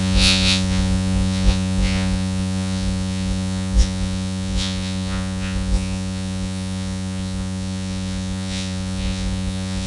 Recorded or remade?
remade